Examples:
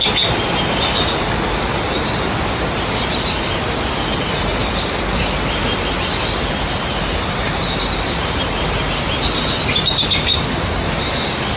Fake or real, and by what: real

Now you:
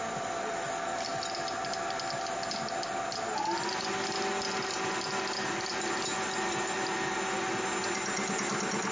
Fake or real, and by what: real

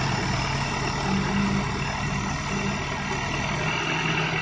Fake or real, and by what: real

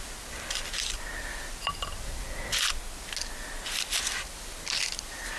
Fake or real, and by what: real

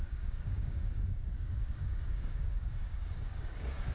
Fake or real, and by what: fake, codec, DAC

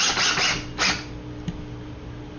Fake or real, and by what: real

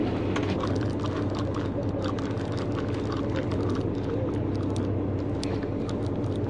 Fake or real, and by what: real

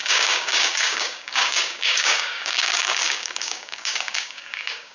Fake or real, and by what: fake, codec, DAC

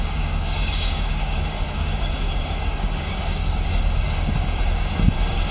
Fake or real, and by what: fake, codec, DAC